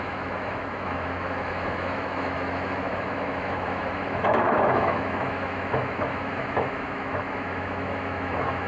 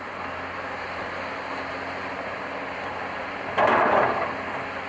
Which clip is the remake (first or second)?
first